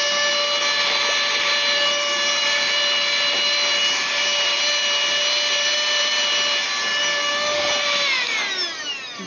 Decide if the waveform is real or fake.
real